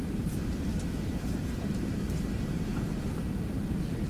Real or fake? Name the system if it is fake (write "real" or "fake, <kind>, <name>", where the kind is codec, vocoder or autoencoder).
fake, vocoder, BigVGAN v2